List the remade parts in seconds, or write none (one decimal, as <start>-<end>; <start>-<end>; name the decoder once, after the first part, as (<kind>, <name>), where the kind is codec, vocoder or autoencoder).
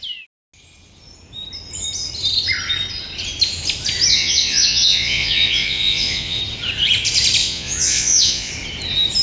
4.1-6.4 (vocoder, Vocos); 7.4-8.5